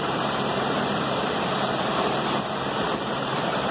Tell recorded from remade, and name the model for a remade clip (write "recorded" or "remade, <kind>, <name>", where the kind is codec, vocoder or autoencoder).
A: remade, vocoder, BigVGAN v2